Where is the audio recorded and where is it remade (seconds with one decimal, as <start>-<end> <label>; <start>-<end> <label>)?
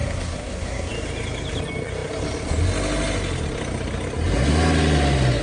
0.0-0.9 remade; 0.9-5.4 recorded